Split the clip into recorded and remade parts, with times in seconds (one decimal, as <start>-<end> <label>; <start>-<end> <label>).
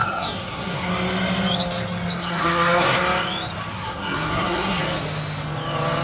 0.0-0.9 remade; 0.9-2.2 recorded; 2.2-3.0 remade; 3.0-3.7 recorded; 3.7-4.8 remade; 4.8-6.0 recorded